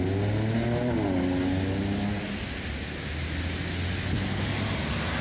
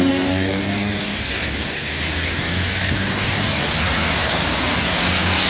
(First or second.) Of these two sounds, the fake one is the second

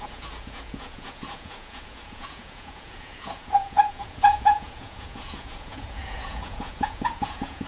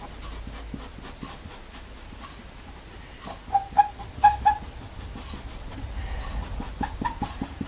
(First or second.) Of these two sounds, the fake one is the first